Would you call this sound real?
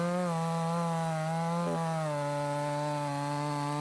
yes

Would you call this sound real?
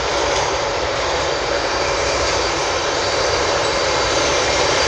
no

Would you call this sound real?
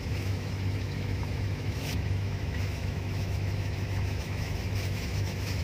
no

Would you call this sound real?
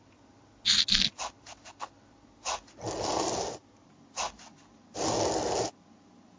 yes